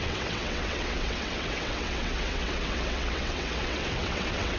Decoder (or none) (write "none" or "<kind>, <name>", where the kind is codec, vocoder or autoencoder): vocoder, WaveNeXt